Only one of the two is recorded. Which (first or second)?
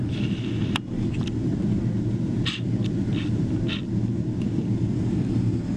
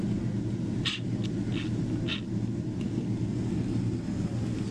second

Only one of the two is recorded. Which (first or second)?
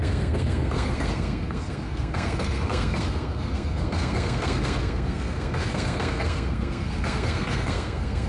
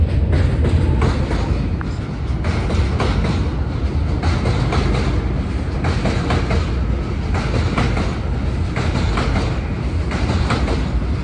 second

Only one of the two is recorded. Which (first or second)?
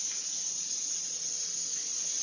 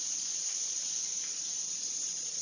first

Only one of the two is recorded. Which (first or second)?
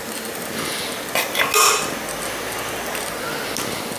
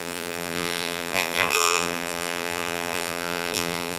first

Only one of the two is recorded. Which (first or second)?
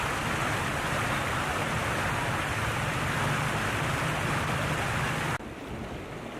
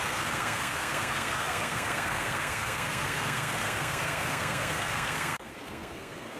first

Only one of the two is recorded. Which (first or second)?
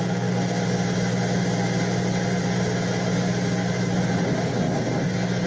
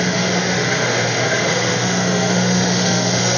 first